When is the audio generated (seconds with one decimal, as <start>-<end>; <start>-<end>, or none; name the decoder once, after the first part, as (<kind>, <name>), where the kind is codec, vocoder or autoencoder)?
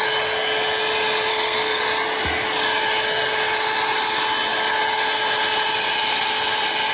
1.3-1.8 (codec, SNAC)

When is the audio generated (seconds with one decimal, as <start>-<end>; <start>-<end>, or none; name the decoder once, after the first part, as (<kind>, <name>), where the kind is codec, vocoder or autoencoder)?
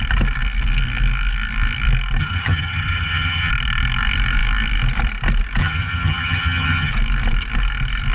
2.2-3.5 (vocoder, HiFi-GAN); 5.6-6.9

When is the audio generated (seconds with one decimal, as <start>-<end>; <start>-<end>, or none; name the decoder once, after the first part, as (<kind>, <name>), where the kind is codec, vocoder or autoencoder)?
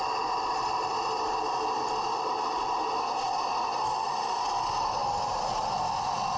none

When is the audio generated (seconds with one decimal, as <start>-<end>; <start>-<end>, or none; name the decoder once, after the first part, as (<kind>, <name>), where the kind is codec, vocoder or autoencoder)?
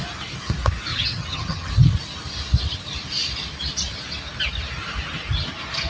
0.9-1.7 (vocoder, HiFi-GAN)